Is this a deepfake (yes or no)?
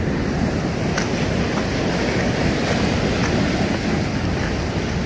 no